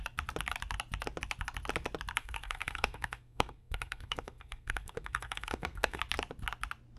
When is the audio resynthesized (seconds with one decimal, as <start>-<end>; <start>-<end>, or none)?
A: 2.2-6.0